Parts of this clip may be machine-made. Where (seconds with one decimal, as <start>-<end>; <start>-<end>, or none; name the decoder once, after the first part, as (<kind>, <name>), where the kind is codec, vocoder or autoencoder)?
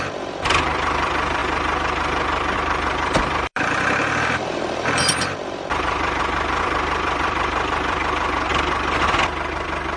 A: 0.0-8.5 (vocoder, BigVGAN v2); 9.5-10.0